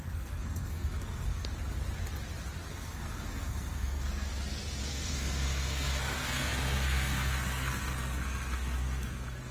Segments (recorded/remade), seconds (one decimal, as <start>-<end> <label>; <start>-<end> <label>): 0.0-1.5 remade; 1.5-2.7 recorded; 2.7-4.3 remade; 4.3-4.9 recorded; 4.9-9.5 remade